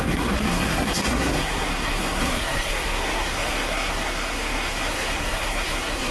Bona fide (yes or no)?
no